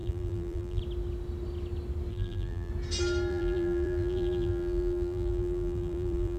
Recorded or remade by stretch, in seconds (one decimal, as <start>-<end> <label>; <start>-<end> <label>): 0.0-0.8 remade; 0.8-2.1 recorded; 2.1-2.7 remade; 2.7-3.3 recorded; 3.3-6.4 remade